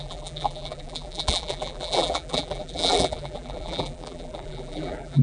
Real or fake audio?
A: fake